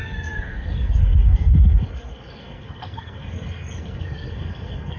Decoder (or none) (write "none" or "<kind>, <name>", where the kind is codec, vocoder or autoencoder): codec, SNAC